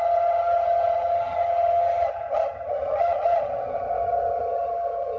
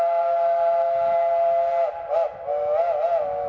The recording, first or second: second